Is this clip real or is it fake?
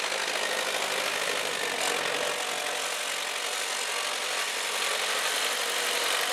real